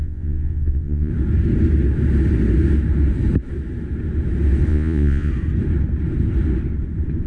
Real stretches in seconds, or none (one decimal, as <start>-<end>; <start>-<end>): 1.1-4.7; 5.3-7.3